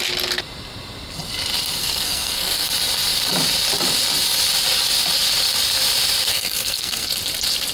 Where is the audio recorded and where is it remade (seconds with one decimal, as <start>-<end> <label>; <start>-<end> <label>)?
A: 0.0-1.8 recorded; 1.8-2.7 remade; 2.7-6.3 recorded; 6.3-7.1 remade; 7.1-7.7 recorded